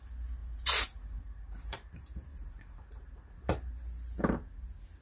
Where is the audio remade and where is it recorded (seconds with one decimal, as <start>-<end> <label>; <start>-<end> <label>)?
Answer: 0.0-0.4 recorded; 0.4-3.2 remade; 3.2-5.0 recorded